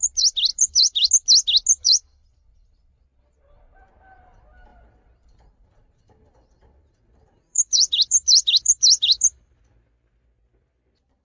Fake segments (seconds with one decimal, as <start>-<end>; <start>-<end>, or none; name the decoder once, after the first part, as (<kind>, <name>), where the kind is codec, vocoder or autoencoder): 0.5-1.1 (vocoder, BigVGAN v2); 1.7-2.3; 4.7-9.6